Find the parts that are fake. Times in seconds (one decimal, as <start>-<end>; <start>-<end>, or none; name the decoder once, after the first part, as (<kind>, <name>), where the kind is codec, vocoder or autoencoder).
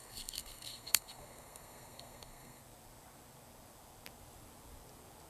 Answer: 0.0-2.6 (codec, SNAC)